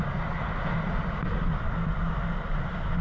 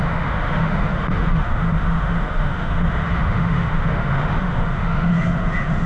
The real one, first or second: first